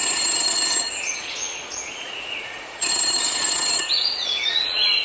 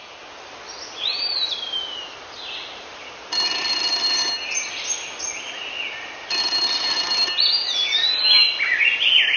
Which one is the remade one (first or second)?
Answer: first